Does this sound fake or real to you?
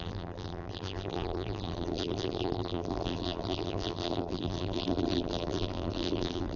fake